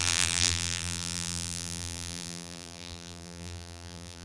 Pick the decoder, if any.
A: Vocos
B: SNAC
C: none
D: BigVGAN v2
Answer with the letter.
D